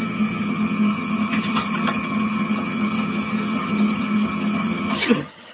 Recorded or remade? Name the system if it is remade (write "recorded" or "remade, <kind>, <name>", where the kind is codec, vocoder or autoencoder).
remade, vocoder, HiFi-GAN